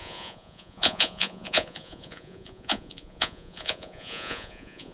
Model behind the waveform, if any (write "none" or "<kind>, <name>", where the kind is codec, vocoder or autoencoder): vocoder, Vocos